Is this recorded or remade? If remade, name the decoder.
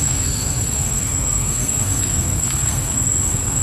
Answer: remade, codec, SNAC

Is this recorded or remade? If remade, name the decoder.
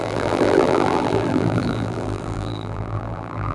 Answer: remade, vocoder, BigVGAN v2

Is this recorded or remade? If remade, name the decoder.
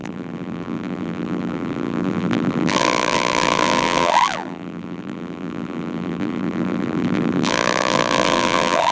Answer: remade, vocoder, BigVGAN v2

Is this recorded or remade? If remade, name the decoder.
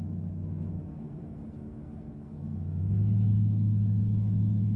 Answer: remade, codec, SNAC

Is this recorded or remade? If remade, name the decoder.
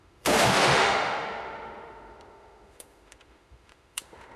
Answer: remade, autoencoder, DAC-VAE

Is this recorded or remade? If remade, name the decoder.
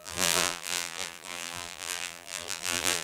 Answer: remade, vocoder, BigVGAN v2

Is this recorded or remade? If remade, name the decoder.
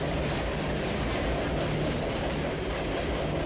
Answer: recorded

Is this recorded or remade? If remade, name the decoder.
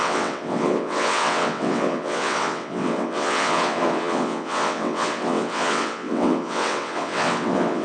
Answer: remade, vocoder, WaveNeXt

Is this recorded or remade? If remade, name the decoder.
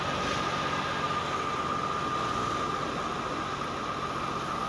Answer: recorded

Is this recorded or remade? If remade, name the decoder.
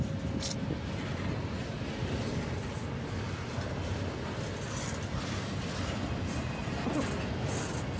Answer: recorded